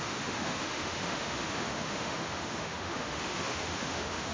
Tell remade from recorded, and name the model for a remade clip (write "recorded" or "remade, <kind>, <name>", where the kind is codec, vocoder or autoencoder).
remade, autoencoder, DAC-VAE